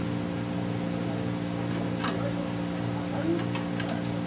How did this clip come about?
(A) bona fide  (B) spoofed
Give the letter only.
A